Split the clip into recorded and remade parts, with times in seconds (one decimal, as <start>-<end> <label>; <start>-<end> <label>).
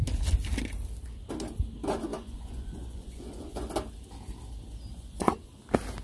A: 0.0-2.1 recorded; 2.1-3.7 remade; 3.7-4.9 recorded; 4.9-5.5 remade; 5.5-6.0 recorded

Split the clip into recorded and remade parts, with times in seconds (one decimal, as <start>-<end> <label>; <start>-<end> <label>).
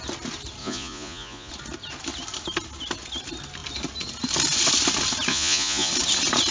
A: 0.0-0.6 recorded; 0.6-1.5 remade; 1.5-5.3 recorded; 5.3-5.9 remade; 5.9-6.5 recorded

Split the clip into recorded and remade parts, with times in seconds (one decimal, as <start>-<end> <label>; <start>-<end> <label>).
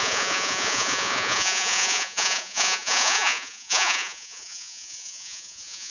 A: 0.0-5.9 remade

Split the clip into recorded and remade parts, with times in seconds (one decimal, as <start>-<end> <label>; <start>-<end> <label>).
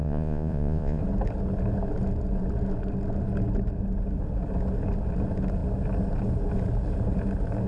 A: 0.0-1.0 remade; 1.0-7.7 recorded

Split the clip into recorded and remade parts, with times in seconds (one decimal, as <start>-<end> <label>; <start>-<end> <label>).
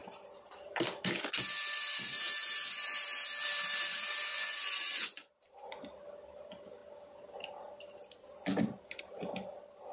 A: 0.0-4.3 recorded; 4.3-5.3 remade; 5.3-9.9 recorded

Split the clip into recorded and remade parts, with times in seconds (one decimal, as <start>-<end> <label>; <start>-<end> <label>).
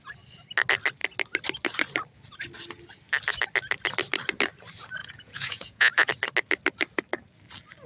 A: 0.0-5.0 recorded; 5.0-6.1 remade; 6.1-7.9 recorded